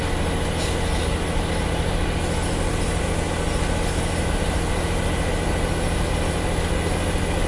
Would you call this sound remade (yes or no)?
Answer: no